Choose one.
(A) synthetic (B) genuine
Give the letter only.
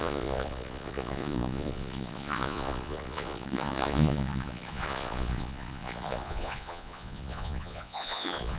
A